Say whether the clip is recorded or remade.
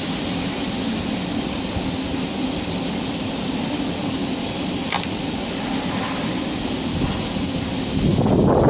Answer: recorded